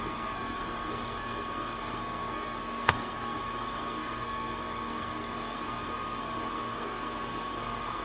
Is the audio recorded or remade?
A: remade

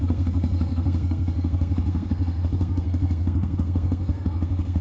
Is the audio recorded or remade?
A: remade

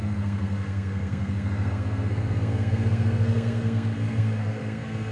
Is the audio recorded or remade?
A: remade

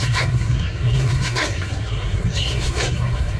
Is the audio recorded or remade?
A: remade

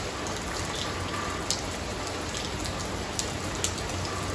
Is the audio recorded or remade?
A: recorded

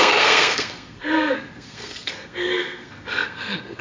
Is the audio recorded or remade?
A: remade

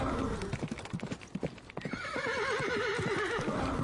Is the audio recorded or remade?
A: recorded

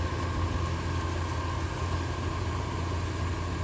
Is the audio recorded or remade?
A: recorded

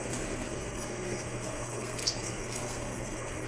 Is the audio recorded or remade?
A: remade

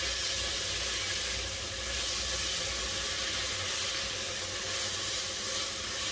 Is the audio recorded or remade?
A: recorded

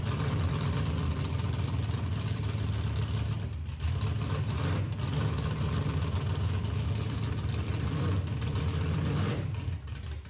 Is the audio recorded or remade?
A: recorded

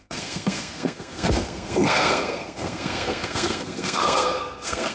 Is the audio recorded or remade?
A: remade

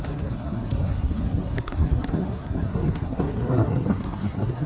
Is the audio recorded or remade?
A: remade